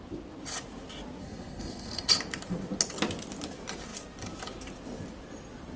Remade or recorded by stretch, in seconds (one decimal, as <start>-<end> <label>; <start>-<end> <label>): 0.0-1.2 recorded; 1.2-2.1 remade; 2.1-5.8 recorded